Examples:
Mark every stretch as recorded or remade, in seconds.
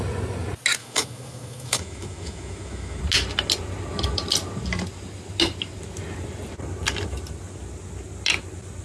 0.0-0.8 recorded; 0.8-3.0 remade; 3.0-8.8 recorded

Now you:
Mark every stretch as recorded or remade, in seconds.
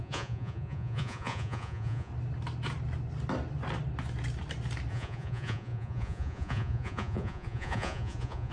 0.0-2.1 remade; 2.1-4.9 recorded; 4.9-8.5 remade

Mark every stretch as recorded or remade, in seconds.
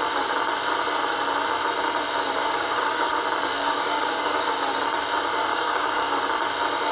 0.0-2.4 recorded; 2.4-3.1 remade; 3.1-3.5 recorded; 3.5-4.7 remade; 4.7-5.5 recorded; 5.5-6.2 remade; 6.2-6.9 recorded